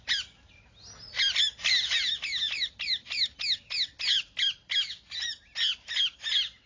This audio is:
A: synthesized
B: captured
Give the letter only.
B